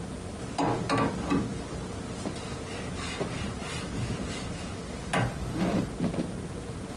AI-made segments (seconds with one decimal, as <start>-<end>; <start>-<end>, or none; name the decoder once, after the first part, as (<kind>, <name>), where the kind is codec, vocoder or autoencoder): none